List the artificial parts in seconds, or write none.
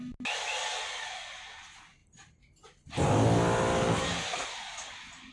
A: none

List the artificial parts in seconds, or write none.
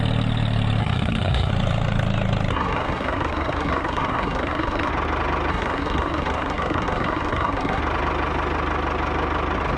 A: 0.8-1.5 (codec, SNAC); 2.5-4.9; 5.5-7.8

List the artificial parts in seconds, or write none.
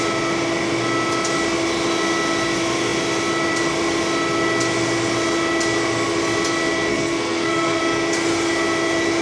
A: 6.9-7.8 (codec, SNAC)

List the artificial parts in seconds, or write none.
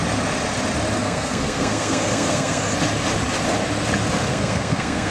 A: 1.0-2.6 (codec, SNAC); 4.3-5.1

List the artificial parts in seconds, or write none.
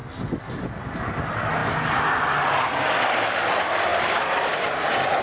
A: none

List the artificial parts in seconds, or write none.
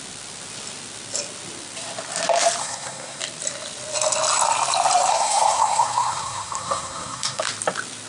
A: 2.6-3.2 (codec, SNAC); 5.1-7.4